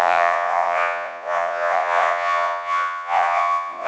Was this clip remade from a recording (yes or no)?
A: yes